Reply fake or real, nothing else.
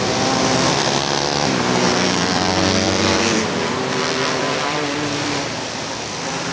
fake